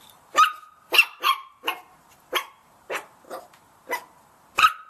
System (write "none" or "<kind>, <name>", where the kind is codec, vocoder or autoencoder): vocoder, BigVGAN v2